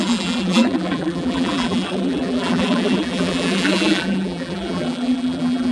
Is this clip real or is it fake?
fake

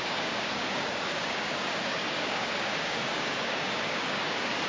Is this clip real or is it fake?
fake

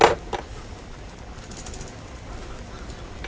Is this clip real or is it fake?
real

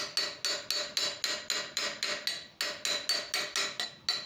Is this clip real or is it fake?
real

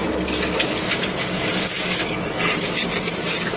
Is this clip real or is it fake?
real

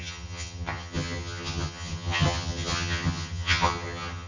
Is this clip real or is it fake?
fake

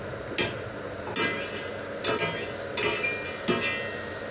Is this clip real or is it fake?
real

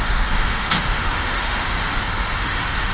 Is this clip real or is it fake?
fake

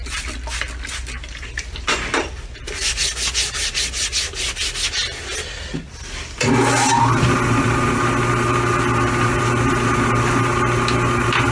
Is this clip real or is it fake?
real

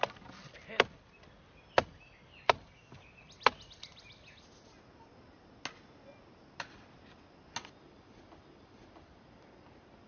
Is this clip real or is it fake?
real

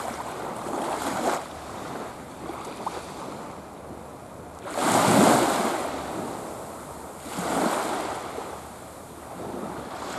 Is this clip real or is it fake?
real